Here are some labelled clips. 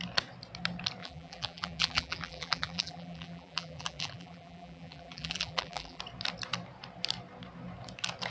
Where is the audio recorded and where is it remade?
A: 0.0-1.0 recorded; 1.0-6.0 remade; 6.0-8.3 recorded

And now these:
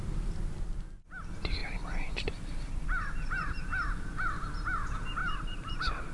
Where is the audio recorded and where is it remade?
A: 0.0-1.6 recorded; 1.6-3.6 remade; 3.6-5.2 recorded; 5.2-6.1 remade